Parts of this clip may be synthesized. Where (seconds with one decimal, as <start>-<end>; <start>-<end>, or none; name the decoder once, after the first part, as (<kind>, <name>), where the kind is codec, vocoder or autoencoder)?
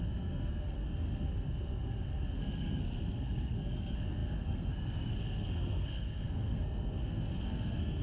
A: 0.0-8.0 (codec, SNAC)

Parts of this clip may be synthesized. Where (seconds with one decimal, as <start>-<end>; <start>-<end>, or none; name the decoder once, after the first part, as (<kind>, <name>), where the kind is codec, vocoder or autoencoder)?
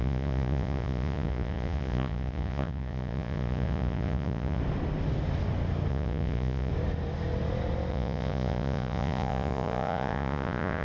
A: 0.0-4.6 (vocoder, Vocos); 5.9-6.7; 7.9-10.8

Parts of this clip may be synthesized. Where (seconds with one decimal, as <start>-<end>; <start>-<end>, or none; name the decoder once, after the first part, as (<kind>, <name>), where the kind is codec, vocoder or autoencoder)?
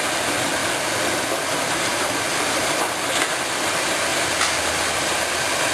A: none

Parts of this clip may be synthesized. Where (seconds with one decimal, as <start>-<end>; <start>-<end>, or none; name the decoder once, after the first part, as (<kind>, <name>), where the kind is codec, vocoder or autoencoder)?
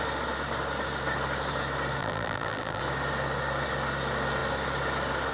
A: 2.0-2.8 (vocoder, BigVGAN v2)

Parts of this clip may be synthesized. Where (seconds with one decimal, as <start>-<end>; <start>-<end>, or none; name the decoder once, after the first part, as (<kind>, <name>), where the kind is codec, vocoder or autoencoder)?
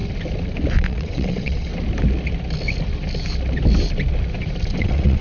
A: 0.7-1.7 (vocoder, WaveNeXt); 4.8-5.2